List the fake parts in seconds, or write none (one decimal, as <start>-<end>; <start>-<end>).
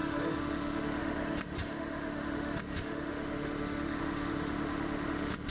0.0-5.5